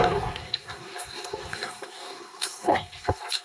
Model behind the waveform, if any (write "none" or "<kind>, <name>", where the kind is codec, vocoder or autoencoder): codec, SNAC